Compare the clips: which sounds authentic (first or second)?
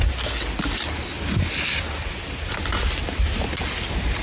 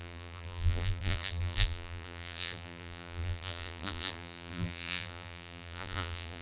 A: first